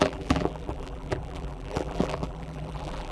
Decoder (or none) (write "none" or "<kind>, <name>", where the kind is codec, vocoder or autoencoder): vocoder, BigVGAN v2